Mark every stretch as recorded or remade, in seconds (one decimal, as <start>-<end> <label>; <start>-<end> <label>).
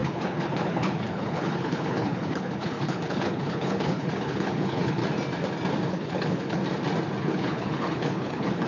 0.0-5.0 remade; 5.0-5.9 recorded; 5.9-6.6 remade; 6.6-7.2 recorded; 7.2-8.7 remade